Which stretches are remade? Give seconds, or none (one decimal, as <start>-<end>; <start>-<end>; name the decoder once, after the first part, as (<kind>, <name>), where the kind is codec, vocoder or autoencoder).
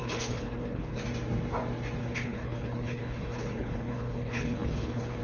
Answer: 0.0-1.0 (codec, HILCodec); 2.0-5.2